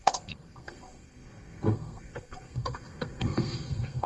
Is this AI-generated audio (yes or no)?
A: yes